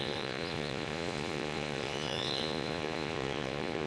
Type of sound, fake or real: fake